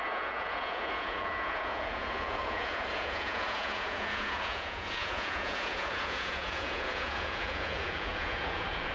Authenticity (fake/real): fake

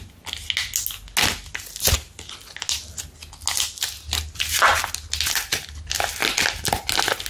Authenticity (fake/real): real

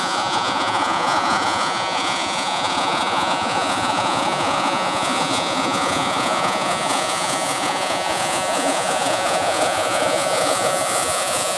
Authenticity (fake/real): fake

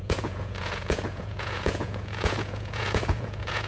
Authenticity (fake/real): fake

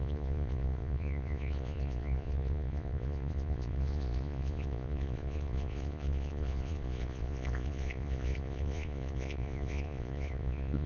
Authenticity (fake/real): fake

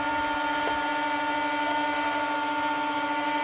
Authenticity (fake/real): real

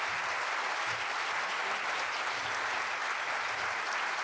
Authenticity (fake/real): real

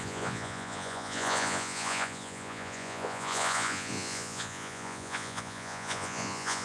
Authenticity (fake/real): fake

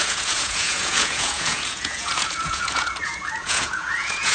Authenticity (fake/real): fake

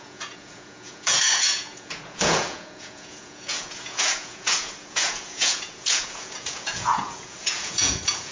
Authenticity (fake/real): fake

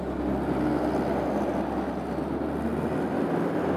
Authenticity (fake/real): real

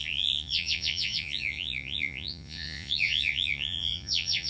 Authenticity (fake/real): fake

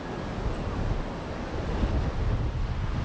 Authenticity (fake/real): real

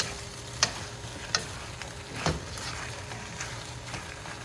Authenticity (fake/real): real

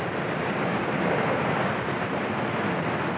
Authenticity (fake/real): real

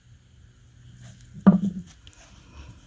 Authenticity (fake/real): real